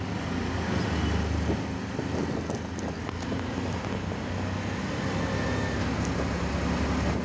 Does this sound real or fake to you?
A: real